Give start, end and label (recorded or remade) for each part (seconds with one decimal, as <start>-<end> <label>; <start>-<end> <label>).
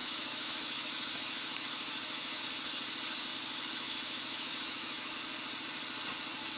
0.0-2.4 remade; 2.4-3.3 recorded; 3.3-5.1 remade; 5.1-6.6 recorded